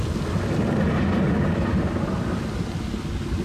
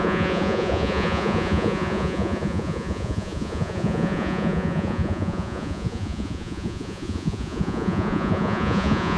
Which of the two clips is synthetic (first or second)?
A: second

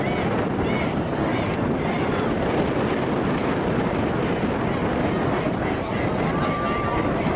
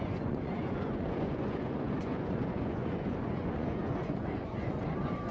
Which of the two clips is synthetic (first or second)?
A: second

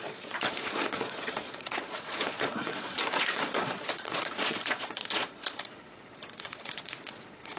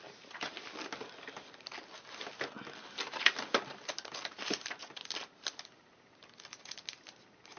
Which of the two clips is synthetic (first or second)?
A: first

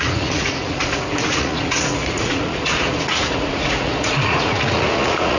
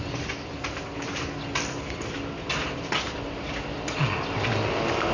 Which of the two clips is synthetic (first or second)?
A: first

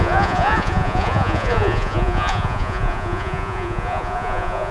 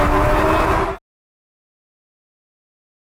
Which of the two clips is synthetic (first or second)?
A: first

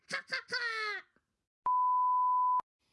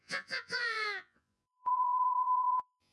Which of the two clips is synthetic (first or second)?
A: second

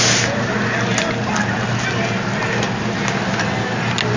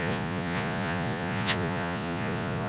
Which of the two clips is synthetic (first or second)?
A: second